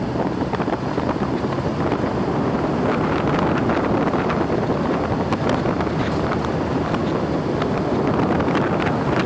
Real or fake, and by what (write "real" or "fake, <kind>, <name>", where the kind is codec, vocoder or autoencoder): real